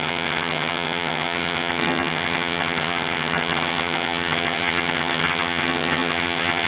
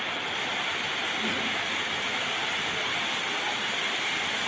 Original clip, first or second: second